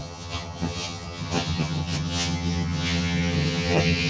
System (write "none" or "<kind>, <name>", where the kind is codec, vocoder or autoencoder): vocoder, HiFi-GAN